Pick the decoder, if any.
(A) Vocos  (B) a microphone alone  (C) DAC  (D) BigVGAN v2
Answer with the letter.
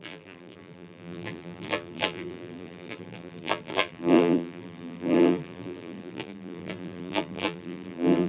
D